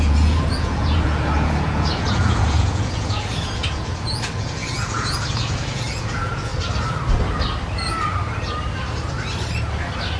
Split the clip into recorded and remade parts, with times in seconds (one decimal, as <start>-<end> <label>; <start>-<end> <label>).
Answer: 0.0-6.5 remade; 6.5-10.2 recorded